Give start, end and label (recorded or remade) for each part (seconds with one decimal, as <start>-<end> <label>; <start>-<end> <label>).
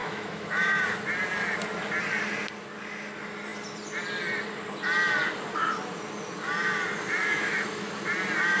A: 0.0-0.8 remade; 0.8-7.2 recorded; 7.2-7.9 remade; 7.9-8.6 recorded